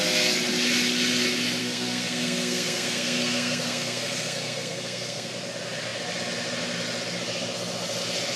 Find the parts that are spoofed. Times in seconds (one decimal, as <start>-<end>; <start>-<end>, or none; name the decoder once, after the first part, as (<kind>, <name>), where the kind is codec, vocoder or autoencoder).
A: 1.6-5.3 (codec, SNAC)